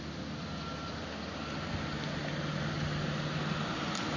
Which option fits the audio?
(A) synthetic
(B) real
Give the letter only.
B